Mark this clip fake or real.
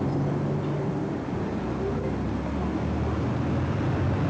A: real